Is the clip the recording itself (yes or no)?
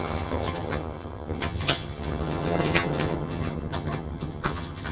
no